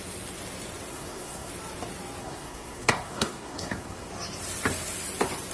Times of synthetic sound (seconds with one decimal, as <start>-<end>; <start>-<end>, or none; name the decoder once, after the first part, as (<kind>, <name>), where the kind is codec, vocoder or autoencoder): 0.9-1.5 (codec, SNAC); 2.2-4.1